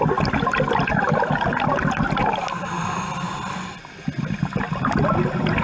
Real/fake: real